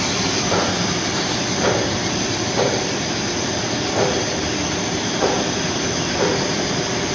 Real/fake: fake